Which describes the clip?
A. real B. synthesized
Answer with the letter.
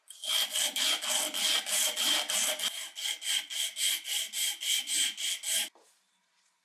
A